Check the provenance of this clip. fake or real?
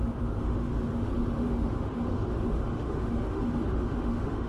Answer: fake